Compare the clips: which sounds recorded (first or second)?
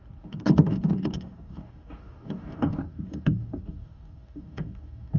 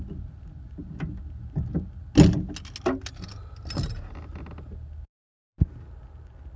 second